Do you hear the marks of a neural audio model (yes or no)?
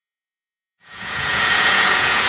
yes